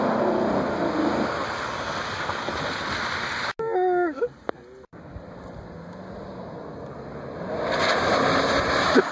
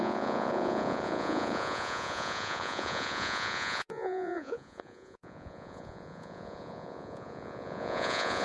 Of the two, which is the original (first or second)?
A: first